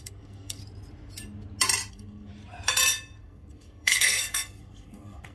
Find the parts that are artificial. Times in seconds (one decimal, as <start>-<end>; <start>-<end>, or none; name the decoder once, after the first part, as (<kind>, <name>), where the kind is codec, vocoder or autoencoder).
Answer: 0.0-0.6 (codec, SNAC); 1.9-2.3; 3.2-5.3